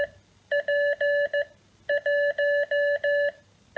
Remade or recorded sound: recorded